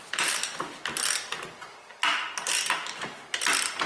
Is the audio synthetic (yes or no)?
no